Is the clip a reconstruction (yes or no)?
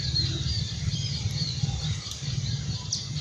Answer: yes